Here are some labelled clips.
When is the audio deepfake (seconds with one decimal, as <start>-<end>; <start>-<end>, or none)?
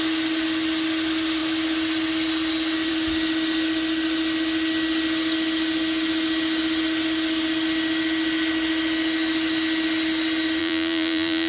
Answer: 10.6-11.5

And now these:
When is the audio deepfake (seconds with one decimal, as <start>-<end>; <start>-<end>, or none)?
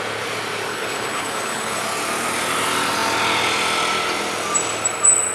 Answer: 0.7-1.8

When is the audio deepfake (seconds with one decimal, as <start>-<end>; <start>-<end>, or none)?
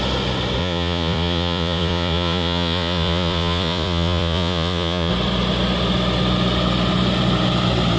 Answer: 0.6-5.1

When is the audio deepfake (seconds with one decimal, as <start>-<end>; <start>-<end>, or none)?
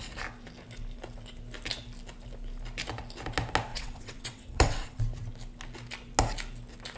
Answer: 3.7-5.0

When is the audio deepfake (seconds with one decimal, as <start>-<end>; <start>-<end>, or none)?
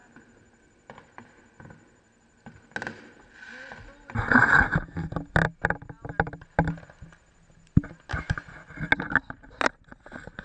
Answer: none